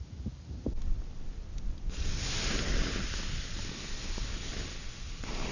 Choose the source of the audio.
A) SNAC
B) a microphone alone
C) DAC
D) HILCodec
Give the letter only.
B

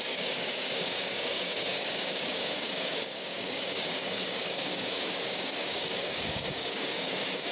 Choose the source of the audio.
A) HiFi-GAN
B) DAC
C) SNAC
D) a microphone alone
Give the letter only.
B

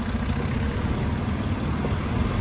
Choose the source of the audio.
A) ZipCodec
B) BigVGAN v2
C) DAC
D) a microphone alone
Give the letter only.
D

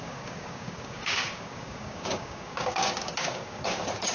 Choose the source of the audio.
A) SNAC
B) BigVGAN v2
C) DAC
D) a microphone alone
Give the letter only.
C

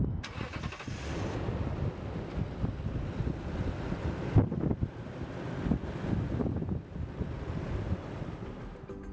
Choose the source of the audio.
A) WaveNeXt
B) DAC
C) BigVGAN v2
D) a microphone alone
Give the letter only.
D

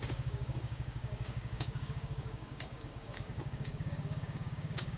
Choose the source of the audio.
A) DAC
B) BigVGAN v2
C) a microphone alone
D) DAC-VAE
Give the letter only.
A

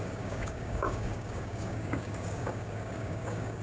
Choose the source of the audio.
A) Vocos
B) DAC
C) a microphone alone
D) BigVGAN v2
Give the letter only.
B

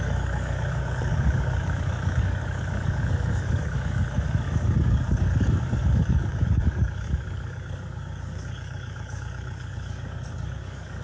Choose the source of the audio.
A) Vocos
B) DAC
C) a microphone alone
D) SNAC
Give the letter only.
B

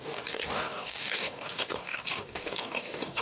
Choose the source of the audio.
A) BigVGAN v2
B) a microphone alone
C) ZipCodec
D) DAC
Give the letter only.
D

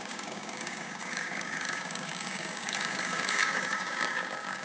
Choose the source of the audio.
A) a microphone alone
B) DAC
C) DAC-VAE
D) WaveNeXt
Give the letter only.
B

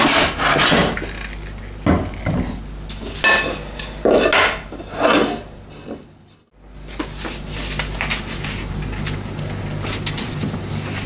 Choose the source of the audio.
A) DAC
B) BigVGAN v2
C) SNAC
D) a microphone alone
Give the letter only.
D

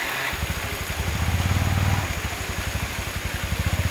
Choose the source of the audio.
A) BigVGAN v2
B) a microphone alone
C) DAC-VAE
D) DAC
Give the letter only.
B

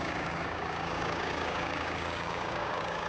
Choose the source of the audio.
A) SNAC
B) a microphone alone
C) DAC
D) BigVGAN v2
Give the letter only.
C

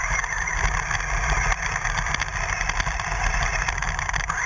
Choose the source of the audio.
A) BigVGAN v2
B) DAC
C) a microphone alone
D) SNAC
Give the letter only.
C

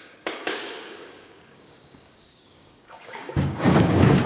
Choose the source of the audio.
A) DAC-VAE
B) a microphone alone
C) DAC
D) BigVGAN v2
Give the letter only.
C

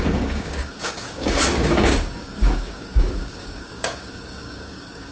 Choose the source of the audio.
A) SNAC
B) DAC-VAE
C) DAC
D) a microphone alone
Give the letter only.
C